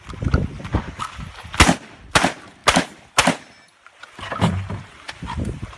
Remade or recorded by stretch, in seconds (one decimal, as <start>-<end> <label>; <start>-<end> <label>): 0.0-5.8 recorded